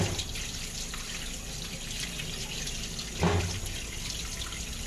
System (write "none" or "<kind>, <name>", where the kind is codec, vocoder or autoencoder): none